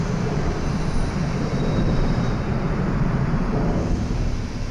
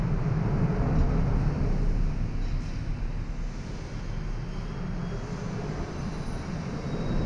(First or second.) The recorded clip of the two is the second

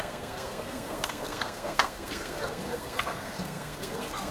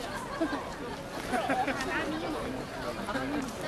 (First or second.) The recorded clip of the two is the second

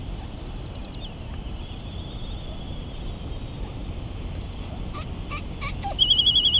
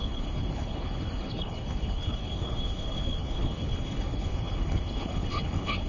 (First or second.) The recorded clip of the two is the first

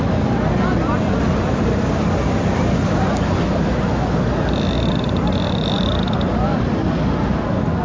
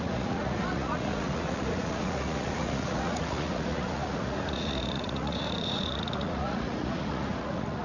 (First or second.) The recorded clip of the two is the first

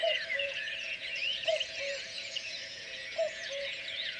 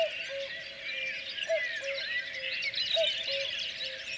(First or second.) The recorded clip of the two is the second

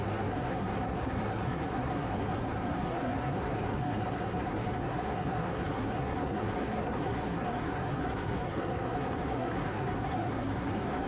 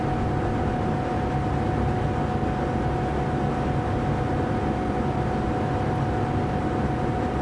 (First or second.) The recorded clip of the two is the second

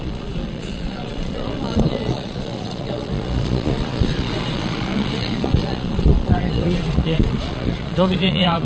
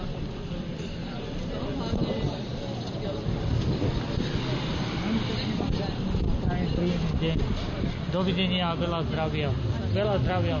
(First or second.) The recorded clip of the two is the second